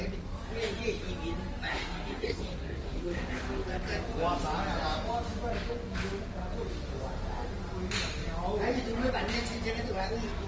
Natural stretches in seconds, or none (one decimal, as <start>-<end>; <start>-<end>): 0.0-1.7; 3.3-10.5